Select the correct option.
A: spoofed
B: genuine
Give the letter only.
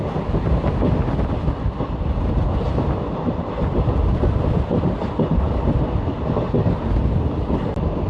B